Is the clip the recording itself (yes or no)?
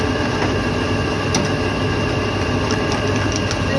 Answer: yes